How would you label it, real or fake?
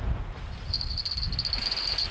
real